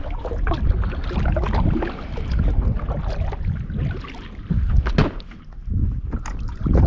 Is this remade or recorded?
recorded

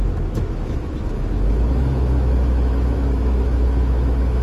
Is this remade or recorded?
remade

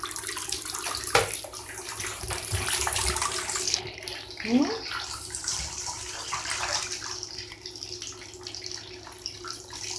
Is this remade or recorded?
remade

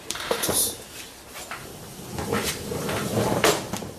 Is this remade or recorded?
remade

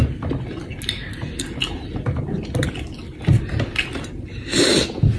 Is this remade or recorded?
recorded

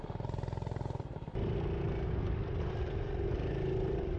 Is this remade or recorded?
recorded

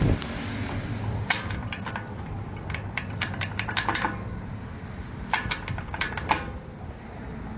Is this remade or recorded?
recorded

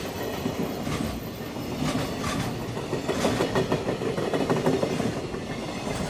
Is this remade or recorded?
recorded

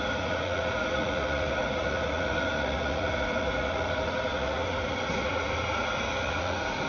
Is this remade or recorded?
remade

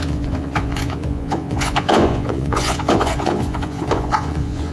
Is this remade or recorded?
remade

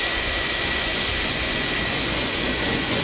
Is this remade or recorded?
remade